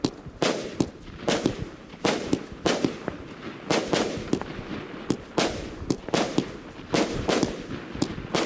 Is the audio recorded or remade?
recorded